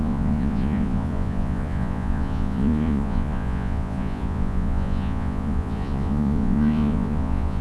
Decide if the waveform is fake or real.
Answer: fake